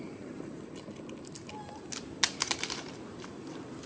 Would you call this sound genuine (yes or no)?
yes